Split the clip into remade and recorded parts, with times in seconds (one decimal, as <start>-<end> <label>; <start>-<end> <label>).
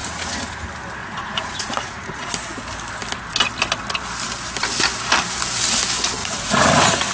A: 0.0-0.6 remade; 0.6-1.0 recorded; 1.0-2.3 remade; 2.3-6.2 recorded; 6.2-7.1 remade